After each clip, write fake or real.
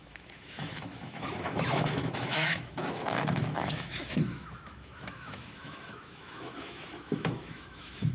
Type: fake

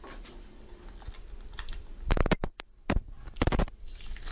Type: real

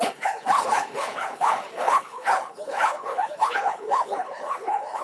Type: fake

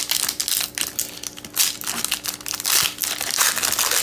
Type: real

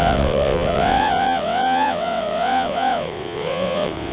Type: fake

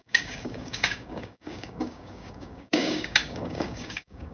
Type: fake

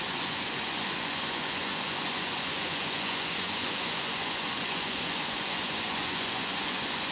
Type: fake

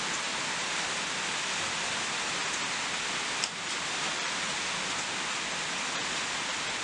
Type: real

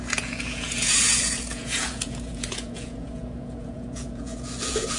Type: fake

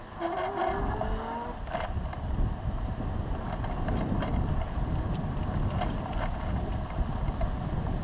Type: real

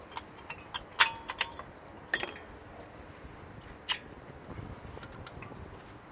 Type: real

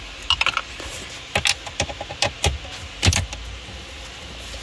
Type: real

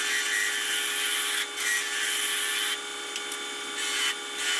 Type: real